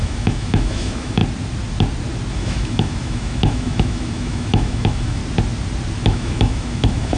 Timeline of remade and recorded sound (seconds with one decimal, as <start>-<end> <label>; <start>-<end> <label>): 0.0-1.2 remade; 1.2-2.3 recorded; 2.3-5.2 remade; 5.2-6.0 recorded; 6.0-7.2 remade